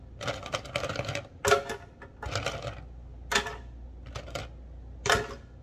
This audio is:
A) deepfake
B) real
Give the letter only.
B